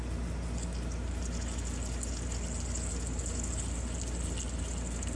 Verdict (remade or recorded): recorded